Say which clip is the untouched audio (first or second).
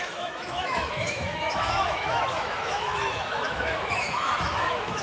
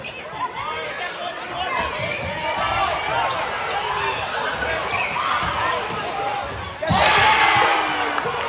second